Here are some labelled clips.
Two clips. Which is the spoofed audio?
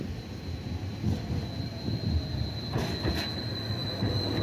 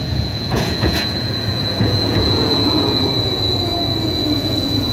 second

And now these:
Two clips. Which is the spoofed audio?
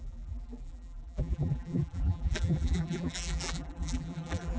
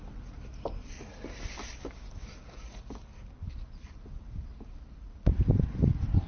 first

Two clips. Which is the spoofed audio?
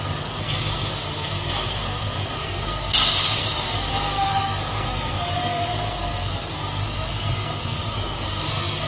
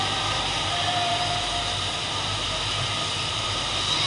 first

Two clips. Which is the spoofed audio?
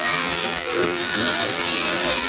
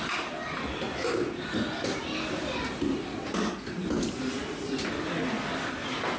first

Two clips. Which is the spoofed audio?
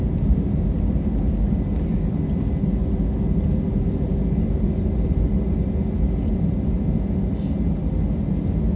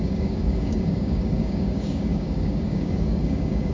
second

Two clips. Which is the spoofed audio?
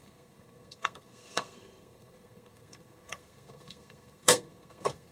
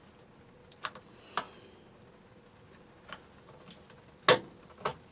first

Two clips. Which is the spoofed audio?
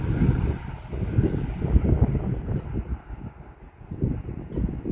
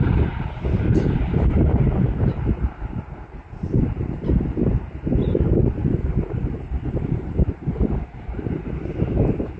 second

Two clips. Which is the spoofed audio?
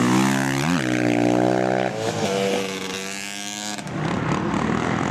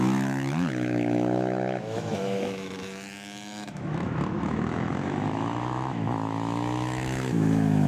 second